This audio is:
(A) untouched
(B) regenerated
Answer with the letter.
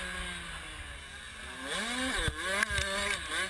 A